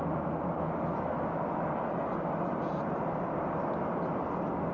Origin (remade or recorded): recorded